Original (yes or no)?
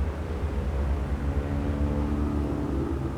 yes